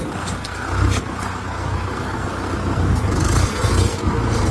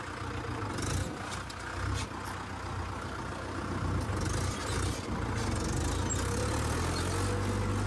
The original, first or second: second